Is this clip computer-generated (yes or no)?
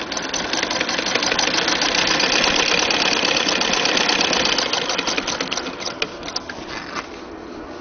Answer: no